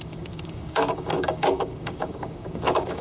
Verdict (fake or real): fake